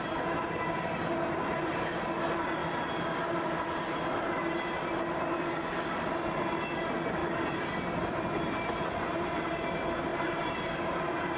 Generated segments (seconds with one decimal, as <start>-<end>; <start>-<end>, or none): 10.1-11.4